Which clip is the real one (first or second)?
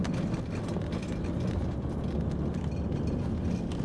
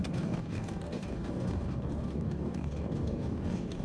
first